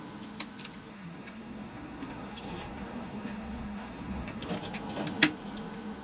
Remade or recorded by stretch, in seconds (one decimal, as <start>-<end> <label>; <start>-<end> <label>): 0.0-0.9 recorded; 0.9-4.5 remade; 4.5-6.0 recorded